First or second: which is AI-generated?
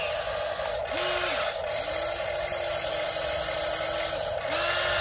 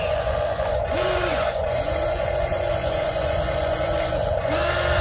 second